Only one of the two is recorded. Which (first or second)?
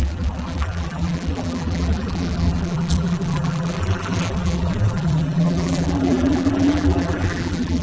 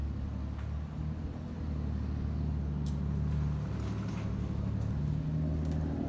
second